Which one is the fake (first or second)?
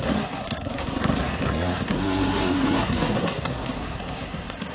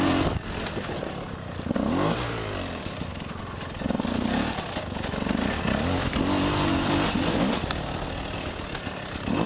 first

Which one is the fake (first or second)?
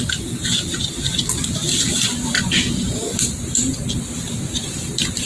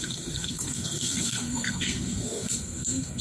second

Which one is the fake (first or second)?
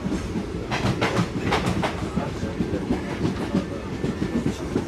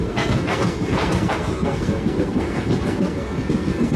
second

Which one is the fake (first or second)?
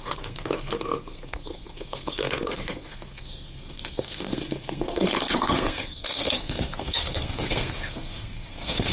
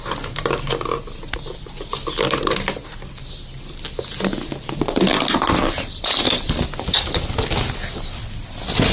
first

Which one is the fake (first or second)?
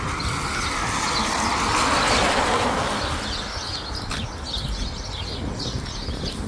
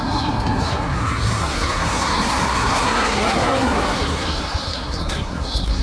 second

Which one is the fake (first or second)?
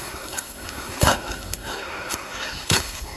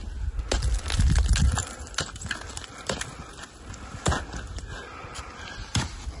first